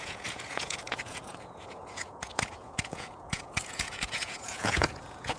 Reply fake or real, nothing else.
fake